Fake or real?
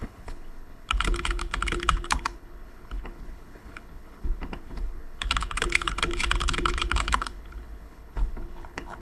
fake